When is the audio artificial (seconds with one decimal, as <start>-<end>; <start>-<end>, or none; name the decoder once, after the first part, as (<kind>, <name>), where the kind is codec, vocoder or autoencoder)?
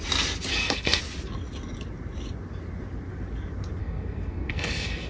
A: 0.5-1.0 (codec, SNAC); 3.8-5.1